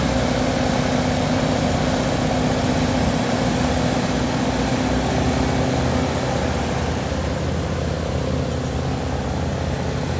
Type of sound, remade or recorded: recorded